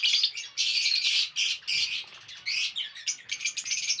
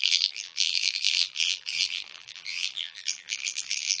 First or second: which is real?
first